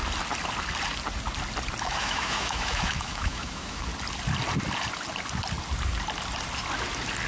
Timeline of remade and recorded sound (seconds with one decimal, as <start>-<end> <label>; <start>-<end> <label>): 0.0-1.8 recorded; 1.8-3.9 remade; 3.9-7.3 recorded